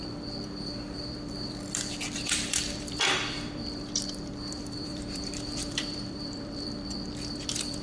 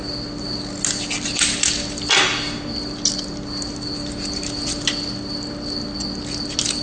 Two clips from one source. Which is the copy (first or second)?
first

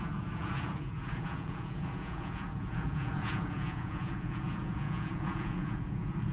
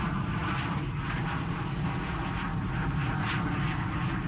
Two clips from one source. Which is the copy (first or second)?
first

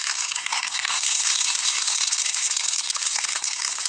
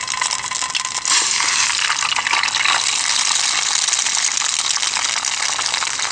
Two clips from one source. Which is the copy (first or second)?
first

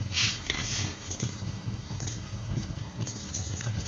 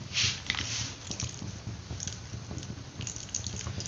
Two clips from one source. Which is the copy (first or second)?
first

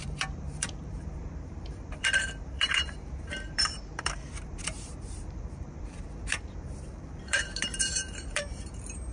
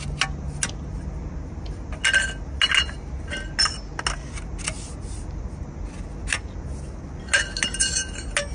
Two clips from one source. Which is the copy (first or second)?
first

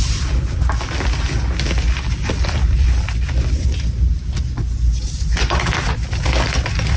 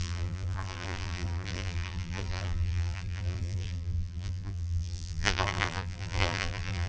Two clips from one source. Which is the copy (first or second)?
second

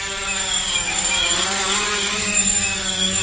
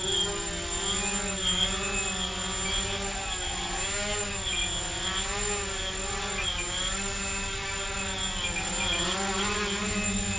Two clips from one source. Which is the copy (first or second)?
first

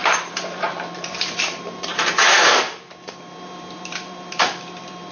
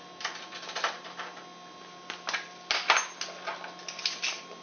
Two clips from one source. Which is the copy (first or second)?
first